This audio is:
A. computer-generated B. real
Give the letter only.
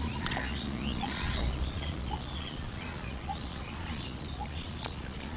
A